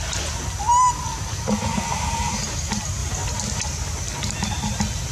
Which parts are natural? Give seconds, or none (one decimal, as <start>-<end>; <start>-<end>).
0.0-1.7; 2.5-5.1